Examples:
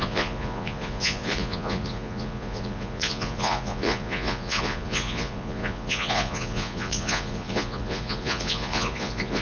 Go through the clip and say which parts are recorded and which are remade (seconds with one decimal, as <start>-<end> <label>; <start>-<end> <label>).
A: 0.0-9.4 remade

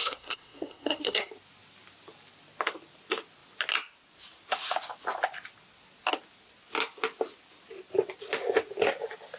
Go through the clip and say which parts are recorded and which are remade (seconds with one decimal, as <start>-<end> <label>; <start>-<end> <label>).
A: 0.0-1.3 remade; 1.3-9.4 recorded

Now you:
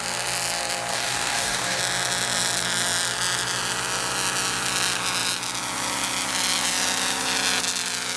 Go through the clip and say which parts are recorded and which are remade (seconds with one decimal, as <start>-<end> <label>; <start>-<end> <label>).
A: 0.0-0.9 recorded; 0.9-1.8 remade; 1.8-8.2 recorded

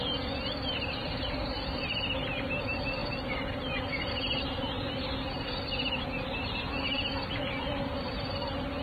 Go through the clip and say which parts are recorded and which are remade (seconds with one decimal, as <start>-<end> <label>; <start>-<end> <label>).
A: 0.0-8.8 recorded

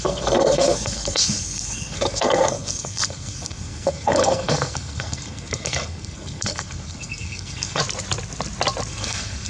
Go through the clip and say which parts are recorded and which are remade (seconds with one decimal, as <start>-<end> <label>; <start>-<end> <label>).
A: 0.0-7.8 remade; 7.8-8.9 recorded; 8.9-9.5 remade